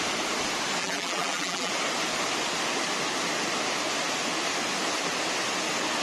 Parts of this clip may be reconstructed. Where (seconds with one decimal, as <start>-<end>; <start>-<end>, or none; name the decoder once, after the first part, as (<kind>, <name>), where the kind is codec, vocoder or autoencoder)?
0.8-1.7 (vocoder, BigVGAN v2)